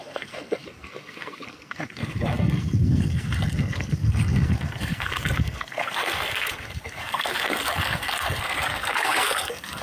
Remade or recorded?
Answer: remade